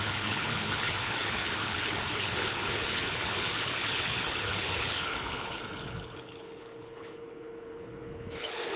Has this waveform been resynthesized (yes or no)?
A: yes